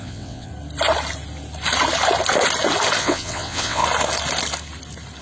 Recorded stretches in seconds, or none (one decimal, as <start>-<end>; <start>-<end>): 0.5-3.0; 3.8-5.2